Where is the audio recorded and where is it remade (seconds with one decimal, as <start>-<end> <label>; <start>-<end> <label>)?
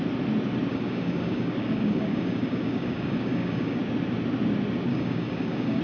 0.0-0.7 recorded; 0.7-3.8 remade; 3.8-4.9 recorded; 4.9-5.8 remade